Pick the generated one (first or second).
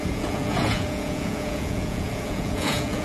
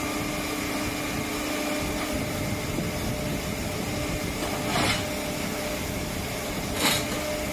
first